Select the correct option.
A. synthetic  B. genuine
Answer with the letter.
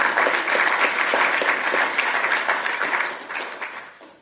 B